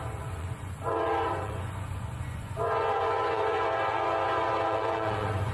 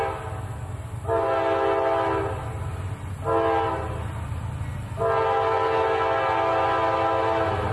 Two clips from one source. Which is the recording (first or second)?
second